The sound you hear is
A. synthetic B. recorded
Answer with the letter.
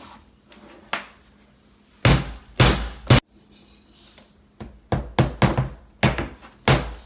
B